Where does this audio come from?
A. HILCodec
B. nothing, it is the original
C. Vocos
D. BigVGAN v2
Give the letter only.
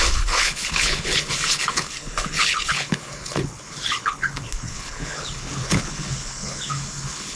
A